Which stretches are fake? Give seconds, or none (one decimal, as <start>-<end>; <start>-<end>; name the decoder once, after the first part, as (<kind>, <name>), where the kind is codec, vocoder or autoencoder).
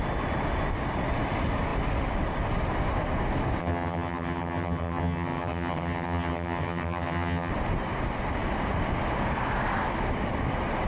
3.6-7.5 (vocoder, HiFi-GAN)